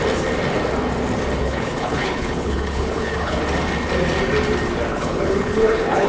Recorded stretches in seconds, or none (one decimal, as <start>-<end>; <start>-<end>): 0.0-1.4; 3.4-4.9